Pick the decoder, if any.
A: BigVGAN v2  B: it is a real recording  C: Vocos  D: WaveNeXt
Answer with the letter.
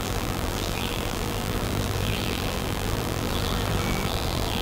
A